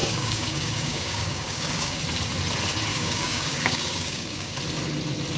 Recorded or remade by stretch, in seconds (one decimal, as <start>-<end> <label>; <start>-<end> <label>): 0.0-2.0 remade; 2.0-2.9 recorded; 2.9-4.6 remade; 4.6-5.4 recorded